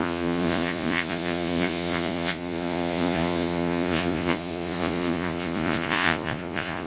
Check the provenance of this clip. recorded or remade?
remade